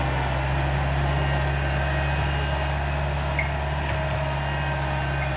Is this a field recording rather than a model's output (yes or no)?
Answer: yes